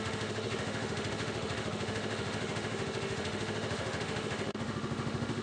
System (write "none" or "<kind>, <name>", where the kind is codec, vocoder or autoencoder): autoencoder, DAC-VAE